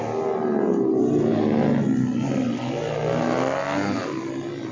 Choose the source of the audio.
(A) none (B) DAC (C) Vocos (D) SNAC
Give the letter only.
A